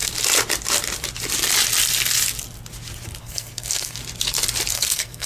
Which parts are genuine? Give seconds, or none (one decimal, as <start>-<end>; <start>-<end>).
0.0-3.2; 4.0-4.7